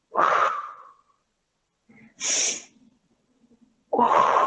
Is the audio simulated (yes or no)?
yes